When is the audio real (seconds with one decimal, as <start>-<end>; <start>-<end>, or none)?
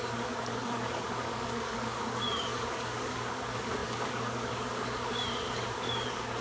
none